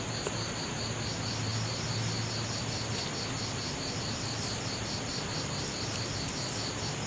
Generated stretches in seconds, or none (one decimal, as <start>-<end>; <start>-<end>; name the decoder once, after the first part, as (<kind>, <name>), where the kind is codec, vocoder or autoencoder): none